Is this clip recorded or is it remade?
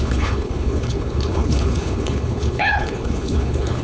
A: remade